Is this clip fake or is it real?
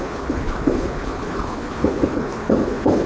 fake